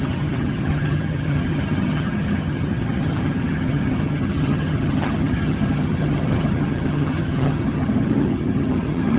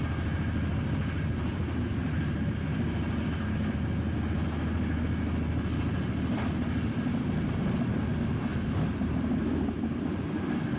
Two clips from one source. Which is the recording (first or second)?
second